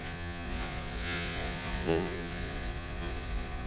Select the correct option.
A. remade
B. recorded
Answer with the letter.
A